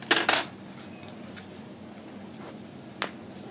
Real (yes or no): yes